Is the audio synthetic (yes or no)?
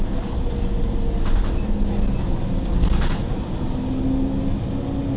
no